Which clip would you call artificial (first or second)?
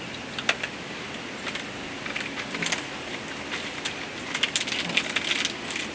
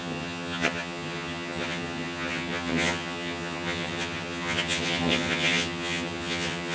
second